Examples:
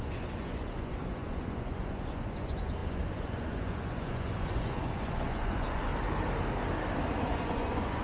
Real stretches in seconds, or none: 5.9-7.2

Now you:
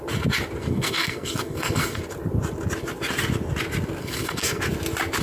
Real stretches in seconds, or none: 0.0-0.6; 2.0-4.0; 4.6-5.2

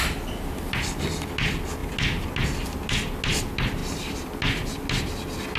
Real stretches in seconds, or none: 0.0-5.6

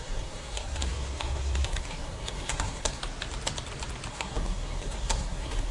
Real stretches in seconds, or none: 3.0-4.1